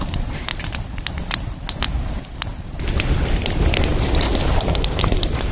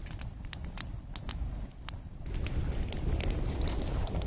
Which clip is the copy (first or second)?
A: first